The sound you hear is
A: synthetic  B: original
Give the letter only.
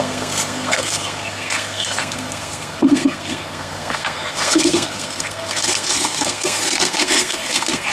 A